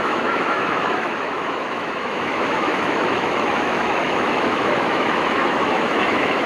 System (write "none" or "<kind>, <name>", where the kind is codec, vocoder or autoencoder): autoencoder, DAC-VAE